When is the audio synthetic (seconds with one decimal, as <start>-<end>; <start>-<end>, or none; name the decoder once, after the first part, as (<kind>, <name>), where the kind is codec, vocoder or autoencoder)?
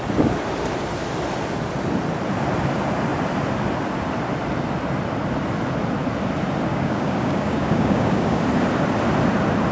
6.7-8.4 (codec, DAC)